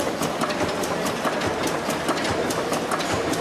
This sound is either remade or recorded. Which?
recorded